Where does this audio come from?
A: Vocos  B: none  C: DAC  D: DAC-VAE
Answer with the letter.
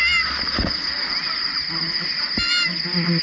B